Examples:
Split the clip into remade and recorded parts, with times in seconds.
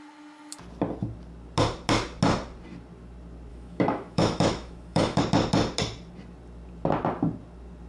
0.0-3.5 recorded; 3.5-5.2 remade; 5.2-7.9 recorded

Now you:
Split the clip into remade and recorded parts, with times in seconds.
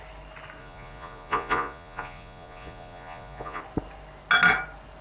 0.0-0.6 recorded; 0.6-3.6 remade; 3.6-5.0 recorded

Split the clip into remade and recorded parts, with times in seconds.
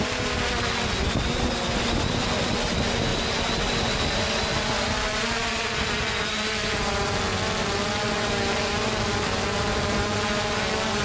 0.0-11.0 recorded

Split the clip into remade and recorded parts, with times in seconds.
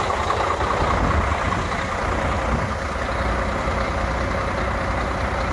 0.0-5.5 recorded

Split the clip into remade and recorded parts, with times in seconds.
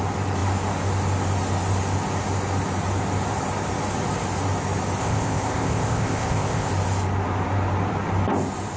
0.0-5.0 recorded; 5.0-6.7 remade; 6.7-8.8 recorded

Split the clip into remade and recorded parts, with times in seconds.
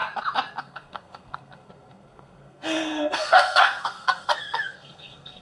0.0-0.6 recorded; 0.6-5.4 remade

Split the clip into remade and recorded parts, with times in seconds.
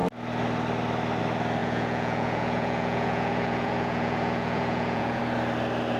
0.0-1.6 recorded; 1.6-5.2 remade; 5.2-6.0 recorded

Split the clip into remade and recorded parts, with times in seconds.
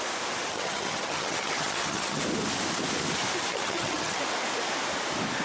0.0-0.5 recorded; 0.5-2.2 remade; 2.2-3.5 recorded; 3.5-4.2 remade; 4.2-5.4 recorded